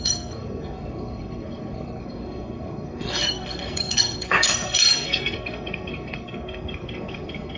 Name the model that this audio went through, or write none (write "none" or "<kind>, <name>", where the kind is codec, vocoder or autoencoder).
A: codec, SNAC